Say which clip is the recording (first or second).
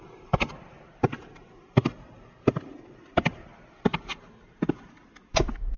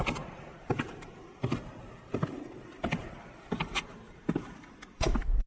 first